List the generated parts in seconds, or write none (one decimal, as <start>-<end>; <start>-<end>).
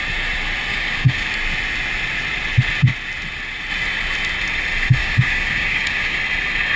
0.7-1.3; 5.0-6.2